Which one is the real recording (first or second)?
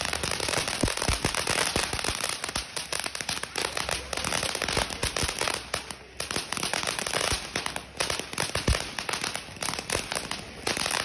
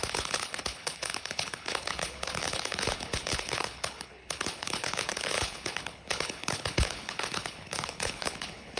first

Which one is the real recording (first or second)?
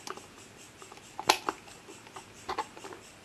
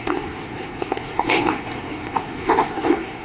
first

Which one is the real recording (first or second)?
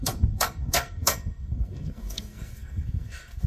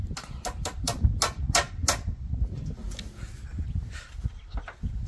second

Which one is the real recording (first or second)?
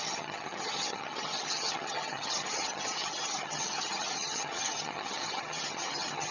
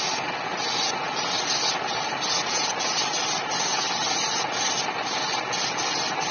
second